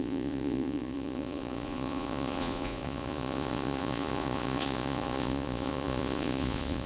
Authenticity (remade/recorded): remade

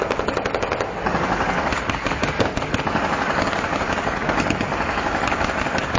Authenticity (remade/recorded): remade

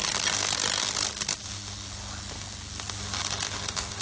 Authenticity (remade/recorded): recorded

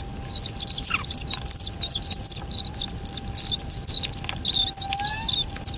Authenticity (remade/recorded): recorded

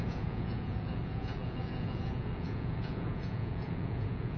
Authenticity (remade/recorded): remade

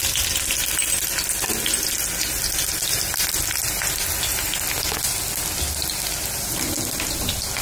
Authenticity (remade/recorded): recorded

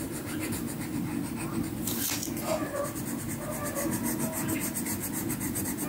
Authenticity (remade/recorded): recorded